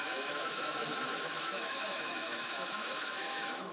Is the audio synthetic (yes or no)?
yes